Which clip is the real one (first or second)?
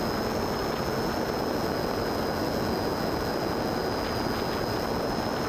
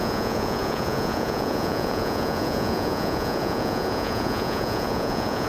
first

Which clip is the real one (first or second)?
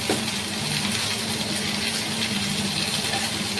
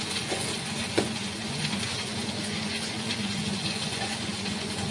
first